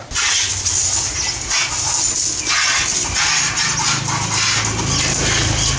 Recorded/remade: recorded